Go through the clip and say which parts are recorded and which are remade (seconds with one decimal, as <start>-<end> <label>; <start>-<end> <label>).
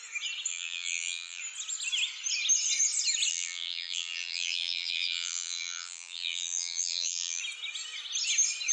0.0-0.5 recorded; 0.5-1.4 remade; 1.4-3.3 recorded; 3.3-7.4 remade; 7.4-8.7 recorded